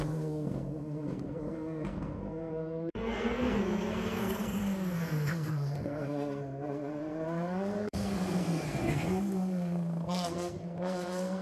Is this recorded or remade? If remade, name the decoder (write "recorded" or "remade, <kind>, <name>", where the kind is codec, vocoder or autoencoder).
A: remade, codec, SNAC